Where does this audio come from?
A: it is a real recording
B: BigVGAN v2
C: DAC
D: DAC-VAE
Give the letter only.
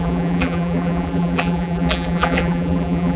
B